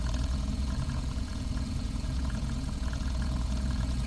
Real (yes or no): no